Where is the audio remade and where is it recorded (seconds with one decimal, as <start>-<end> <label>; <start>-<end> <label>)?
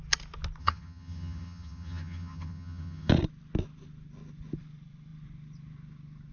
0.0-0.6 recorded; 0.6-3.1 remade; 3.1-6.3 recorded